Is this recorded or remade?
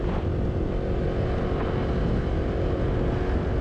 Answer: recorded